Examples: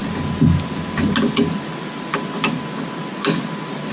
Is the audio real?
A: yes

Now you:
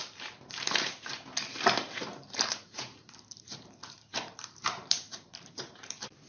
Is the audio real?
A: no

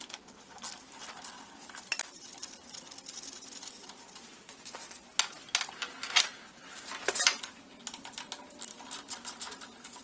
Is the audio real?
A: yes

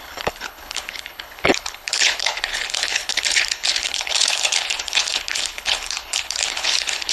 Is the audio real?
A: no